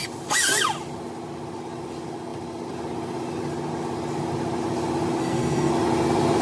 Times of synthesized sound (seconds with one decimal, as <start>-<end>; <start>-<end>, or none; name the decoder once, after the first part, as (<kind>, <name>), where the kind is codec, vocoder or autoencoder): 5.2-5.7 (codec, SNAC)